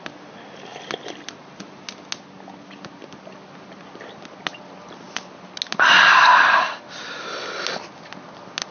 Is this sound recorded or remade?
recorded